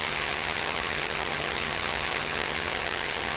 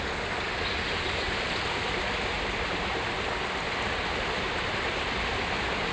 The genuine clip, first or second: second